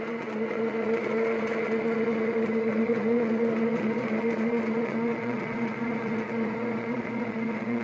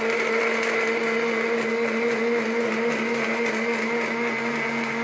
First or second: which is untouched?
second